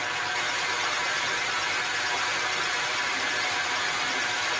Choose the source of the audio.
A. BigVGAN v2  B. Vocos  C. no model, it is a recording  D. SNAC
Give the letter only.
A